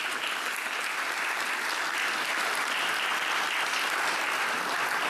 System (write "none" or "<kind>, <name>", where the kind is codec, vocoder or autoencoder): none